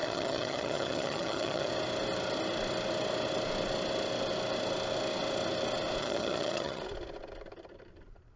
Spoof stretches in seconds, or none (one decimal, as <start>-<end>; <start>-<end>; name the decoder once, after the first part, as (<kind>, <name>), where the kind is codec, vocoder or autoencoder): 0.0-1.7 (vocoder, HiFi-GAN); 6.0-6.8